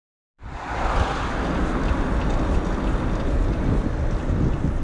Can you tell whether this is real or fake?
real